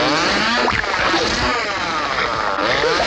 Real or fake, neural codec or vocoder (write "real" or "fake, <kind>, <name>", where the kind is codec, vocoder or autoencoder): real